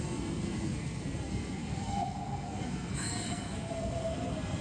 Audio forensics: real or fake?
fake